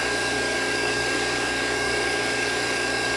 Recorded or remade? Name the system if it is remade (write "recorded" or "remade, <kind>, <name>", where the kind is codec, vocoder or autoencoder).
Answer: remade, codec, DAC